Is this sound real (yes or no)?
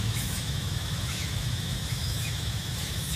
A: no